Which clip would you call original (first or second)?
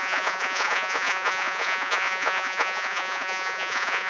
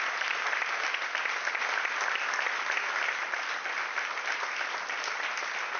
second